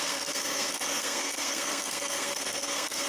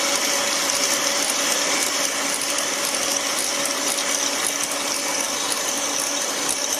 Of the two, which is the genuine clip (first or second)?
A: second